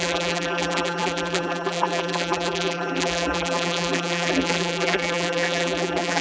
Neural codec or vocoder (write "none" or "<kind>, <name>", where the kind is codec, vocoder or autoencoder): vocoder, BigVGAN v2